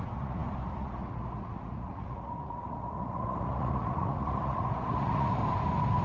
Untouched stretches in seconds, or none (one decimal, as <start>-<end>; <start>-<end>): 5.4-6.0